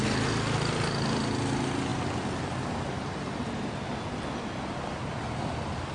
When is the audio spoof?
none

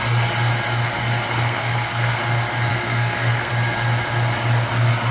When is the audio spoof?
1.3-2.2 (codec, SNAC); 2.7-3.5

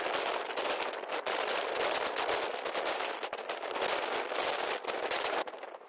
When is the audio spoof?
none

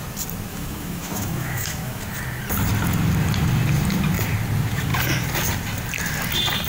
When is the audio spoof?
0.5-2.0 (autoencoder, DAC-VAE)

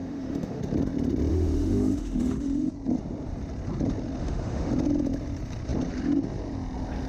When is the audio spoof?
0.0-0.6 (autoencoder, DAC-VAE); 1.3-2.7; 4.2-4.7

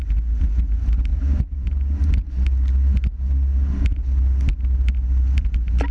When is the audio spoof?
none

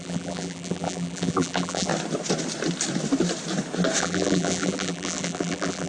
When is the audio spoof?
0.0-1.9 (vocoder, BigVGAN v2); 4.0-5.9

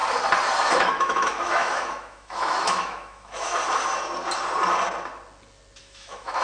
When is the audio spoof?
0.7-3.6 (autoencoder, DAC-VAE); 5.8-6.4